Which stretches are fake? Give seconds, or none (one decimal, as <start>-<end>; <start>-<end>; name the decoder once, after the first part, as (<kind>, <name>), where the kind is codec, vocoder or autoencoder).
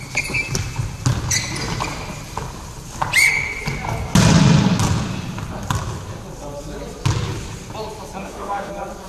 8.2-8.7 (autoencoder, DAC-VAE)